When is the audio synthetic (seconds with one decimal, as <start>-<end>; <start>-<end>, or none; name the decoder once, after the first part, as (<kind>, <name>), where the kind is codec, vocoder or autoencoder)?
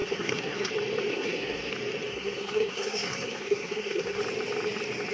0.0-0.7 (codec, SNAC); 1.1-1.7; 2.1-4.2